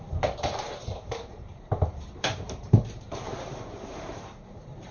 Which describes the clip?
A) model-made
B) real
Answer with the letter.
A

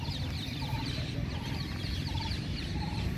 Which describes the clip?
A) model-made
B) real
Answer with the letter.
A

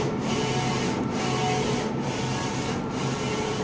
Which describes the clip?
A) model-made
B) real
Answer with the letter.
B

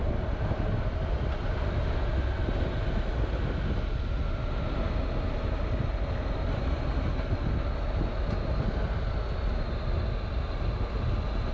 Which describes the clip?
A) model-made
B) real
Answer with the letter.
B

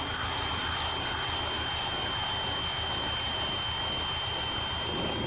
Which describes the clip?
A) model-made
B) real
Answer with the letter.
B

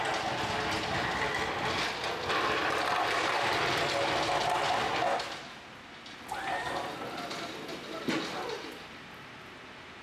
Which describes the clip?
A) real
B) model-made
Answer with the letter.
A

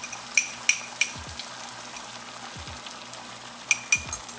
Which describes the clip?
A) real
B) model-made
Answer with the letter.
A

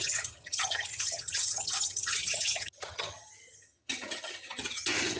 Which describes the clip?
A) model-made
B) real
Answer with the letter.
A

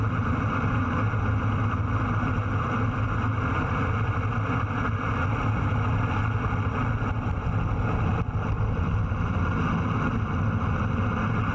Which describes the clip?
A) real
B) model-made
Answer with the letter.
A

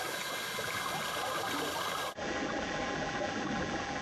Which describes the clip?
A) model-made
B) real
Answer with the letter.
B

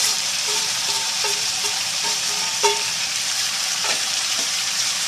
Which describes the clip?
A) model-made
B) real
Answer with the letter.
A